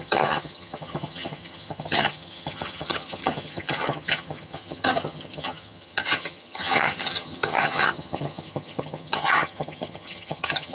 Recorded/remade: remade